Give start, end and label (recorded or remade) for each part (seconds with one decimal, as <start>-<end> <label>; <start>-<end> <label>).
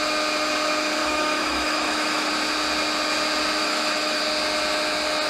0.0-1.0 recorded; 1.0-2.3 remade; 2.3-3.6 recorded; 3.6-4.2 remade; 4.2-5.3 recorded